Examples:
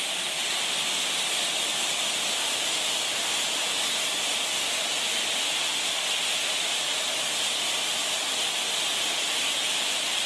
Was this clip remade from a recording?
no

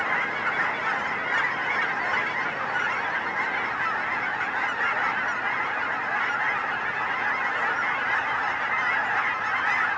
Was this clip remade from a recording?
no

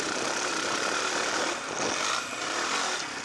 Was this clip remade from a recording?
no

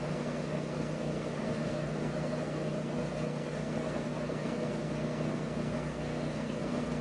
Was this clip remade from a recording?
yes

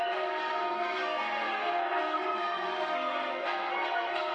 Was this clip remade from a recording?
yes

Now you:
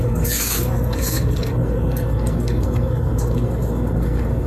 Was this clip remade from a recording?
yes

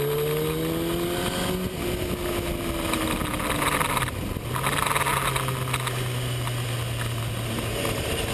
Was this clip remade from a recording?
no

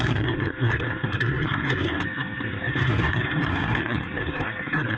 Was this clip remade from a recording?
yes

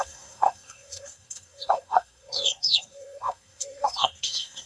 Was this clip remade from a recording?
yes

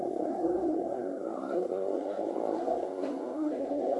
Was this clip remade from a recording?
yes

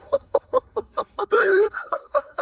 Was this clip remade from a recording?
yes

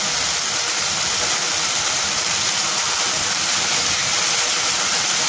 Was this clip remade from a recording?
no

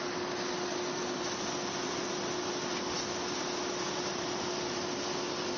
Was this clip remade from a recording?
no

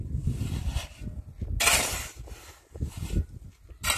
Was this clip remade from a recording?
no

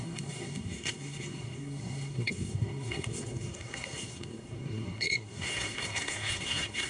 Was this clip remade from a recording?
yes